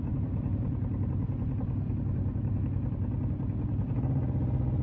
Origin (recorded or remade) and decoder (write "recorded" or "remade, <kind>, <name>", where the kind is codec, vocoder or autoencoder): recorded